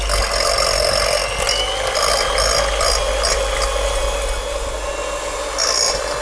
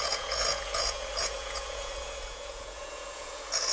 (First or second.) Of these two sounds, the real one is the first